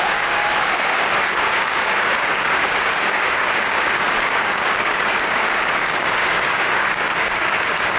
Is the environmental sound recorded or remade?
remade